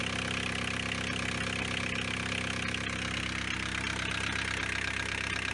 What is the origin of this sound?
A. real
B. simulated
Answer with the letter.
A